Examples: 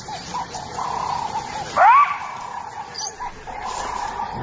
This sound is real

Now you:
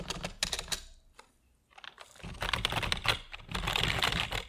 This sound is real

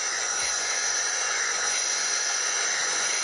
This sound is fake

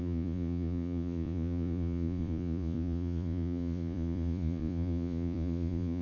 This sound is fake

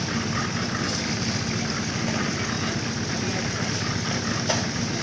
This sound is real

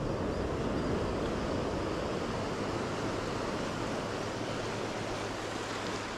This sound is real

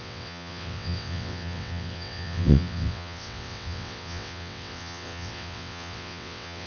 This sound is fake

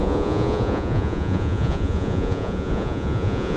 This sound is fake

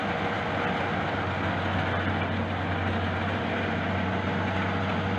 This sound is real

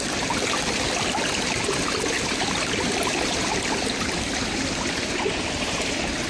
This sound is real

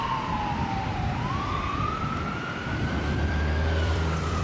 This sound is fake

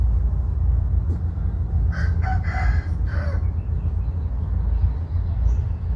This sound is real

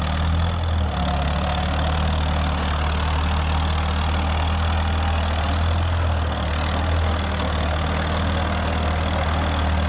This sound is real